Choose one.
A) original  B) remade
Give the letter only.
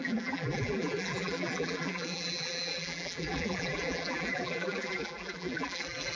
B